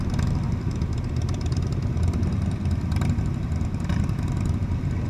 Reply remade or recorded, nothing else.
recorded